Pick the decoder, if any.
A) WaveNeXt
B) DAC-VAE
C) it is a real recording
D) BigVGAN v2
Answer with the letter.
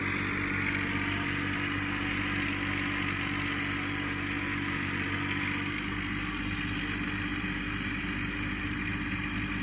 C